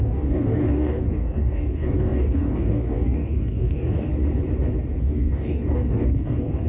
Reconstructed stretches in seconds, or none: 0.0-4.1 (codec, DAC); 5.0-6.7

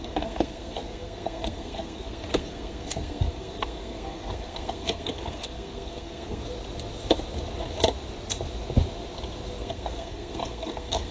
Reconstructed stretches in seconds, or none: 0.0-6.4 (codec, SNAC); 9.6-11.1